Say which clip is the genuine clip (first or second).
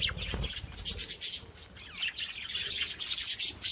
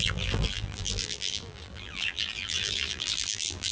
first